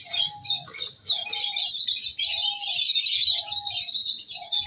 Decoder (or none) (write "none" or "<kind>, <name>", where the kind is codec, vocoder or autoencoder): none